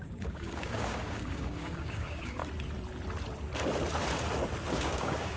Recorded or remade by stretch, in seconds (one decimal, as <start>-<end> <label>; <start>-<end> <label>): 0.0-2.4 remade; 2.4-4.7 recorded; 4.7-5.4 remade